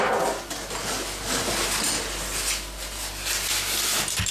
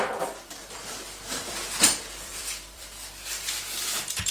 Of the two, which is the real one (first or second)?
first